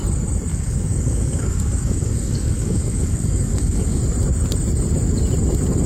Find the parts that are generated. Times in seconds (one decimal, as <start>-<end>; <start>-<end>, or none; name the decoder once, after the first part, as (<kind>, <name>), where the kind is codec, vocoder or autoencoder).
0.5-4.0 (codec, DAC)